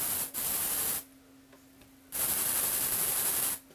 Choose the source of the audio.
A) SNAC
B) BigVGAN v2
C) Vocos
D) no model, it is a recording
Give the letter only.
D